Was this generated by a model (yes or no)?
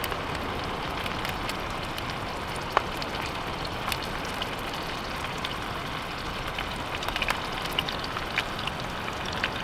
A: no